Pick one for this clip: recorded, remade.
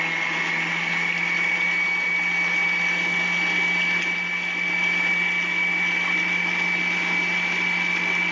recorded